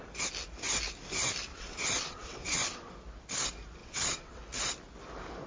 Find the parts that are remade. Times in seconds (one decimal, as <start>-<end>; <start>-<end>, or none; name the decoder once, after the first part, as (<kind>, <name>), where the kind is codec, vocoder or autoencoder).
1.5-2.9 (vocoder, WaveNeXt); 3.8-4.4